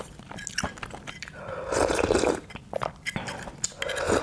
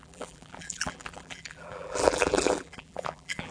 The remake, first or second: second